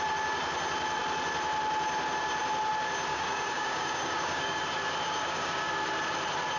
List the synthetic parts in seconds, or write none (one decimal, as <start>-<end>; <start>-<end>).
3.1-4.6; 5.2-5.7